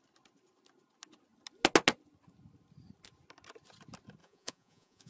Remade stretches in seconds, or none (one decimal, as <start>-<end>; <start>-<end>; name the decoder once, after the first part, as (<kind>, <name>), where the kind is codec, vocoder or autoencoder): 4.2-5.1 (vocoder, Vocos)